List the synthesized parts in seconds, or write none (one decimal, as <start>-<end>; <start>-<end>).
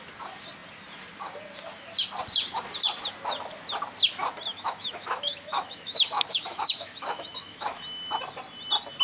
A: 4.5-7.8